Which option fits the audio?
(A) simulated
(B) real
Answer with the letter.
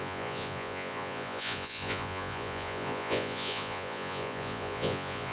A